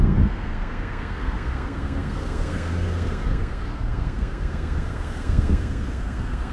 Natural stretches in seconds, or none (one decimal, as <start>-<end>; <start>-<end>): none